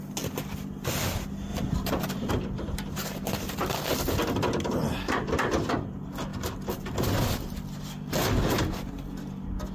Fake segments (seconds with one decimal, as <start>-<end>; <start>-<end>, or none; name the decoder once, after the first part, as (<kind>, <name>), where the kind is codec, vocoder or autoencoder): 1.5-2.3 (vocoder, BigVGAN v2)